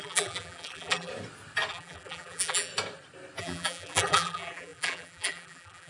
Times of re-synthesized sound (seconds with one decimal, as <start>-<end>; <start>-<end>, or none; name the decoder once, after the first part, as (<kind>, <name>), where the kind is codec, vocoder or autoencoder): 0.0-1.1 (vocoder, BigVGAN v2); 1.7-2.7; 3.4-5.9